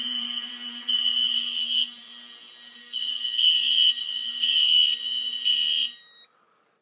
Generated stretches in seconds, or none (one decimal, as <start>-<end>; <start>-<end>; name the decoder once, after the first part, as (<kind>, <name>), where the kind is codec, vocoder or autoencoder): none